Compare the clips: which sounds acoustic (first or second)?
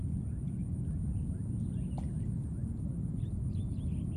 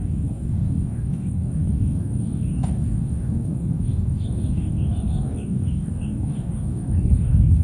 first